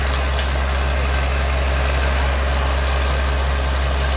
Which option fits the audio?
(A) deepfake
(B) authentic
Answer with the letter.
B